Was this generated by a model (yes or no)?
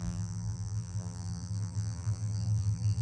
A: yes